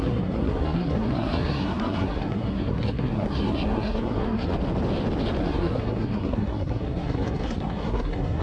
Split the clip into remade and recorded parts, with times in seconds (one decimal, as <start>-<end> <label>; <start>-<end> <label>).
0.0-4.5 remade; 4.5-5.4 recorded; 5.4-8.4 remade